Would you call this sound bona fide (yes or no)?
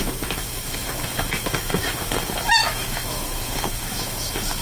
no